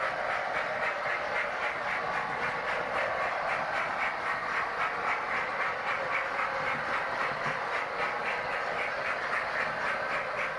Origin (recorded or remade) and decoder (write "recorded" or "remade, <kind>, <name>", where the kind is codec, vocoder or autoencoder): recorded